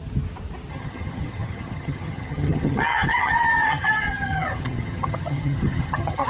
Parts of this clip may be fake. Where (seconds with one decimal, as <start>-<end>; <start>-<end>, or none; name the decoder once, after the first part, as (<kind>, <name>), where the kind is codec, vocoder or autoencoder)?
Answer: 0.7-6.3 (vocoder, HiFi-GAN)